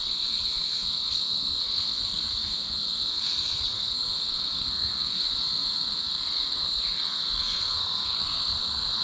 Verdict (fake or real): fake